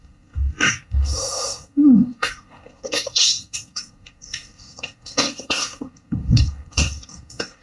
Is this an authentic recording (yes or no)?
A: no